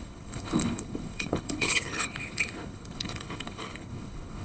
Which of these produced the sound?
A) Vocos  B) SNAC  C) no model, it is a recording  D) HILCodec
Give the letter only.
D